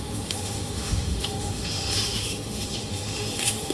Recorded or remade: remade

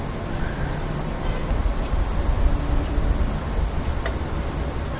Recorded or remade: remade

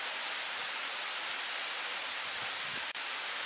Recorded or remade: recorded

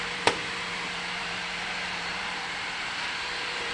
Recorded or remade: remade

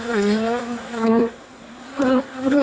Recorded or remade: remade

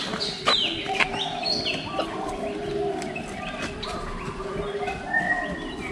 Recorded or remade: recorded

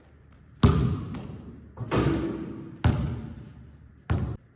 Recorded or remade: recorded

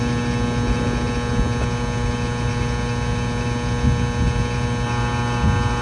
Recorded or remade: recorded